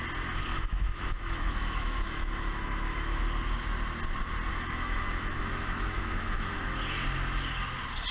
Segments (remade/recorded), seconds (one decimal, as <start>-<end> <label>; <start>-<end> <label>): 0.0-0.5 recorded; 0.5-3.2 remade; 3.2-4.5 recorded; 4.5-6.8 remade; 6.8-8.1 recorded